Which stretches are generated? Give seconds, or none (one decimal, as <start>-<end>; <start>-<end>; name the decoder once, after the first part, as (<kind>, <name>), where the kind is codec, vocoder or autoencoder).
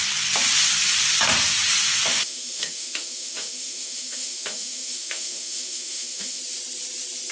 2.1-6.4 (autoencoder, DAC-VAE)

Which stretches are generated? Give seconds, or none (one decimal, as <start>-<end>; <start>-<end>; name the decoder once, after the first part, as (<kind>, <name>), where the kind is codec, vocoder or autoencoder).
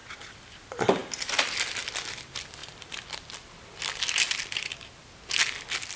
none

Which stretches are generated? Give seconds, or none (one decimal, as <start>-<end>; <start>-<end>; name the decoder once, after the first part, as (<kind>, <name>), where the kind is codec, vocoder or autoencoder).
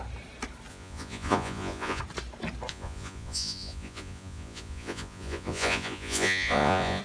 0.7-2.0 (vocoder, Vocos); 2.7-7.0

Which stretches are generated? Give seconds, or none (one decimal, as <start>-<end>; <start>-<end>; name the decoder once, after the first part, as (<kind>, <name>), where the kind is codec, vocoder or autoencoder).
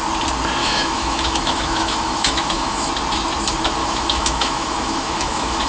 0.6-2.9 (autoencoder, DAC-VAE); 3.8-5.7